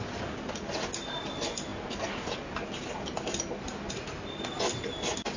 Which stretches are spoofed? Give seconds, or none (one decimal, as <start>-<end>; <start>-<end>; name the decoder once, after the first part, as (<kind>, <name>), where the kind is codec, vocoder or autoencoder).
none